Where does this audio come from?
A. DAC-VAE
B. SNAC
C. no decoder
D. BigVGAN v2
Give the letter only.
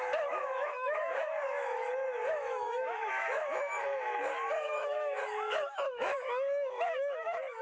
A